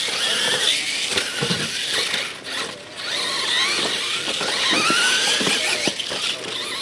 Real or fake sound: real